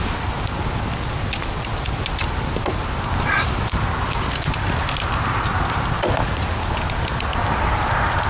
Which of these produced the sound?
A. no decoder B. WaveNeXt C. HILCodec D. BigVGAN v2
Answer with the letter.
A